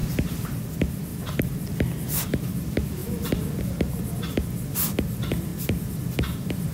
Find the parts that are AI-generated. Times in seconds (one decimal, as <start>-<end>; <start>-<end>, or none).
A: 0.0-0.6; 1.1-1.7; 3.0-3.6; 5.5-6.1